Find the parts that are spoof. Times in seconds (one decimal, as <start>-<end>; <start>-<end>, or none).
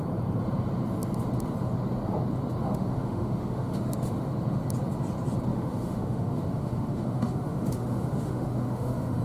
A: 2.6-4.1; 5.5-9.2